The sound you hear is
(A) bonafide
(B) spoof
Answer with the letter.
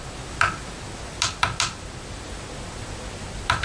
A